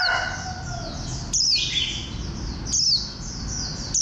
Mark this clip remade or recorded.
recorded